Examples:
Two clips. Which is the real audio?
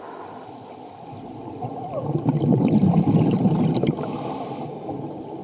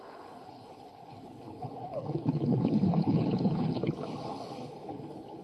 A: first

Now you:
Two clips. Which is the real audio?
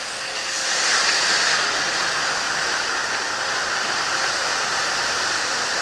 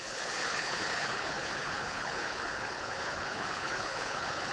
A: first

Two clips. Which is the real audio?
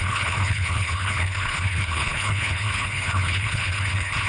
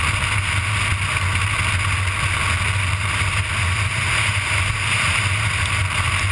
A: second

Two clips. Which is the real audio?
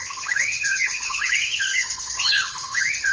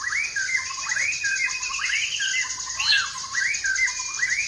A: second